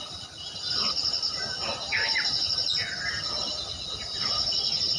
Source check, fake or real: real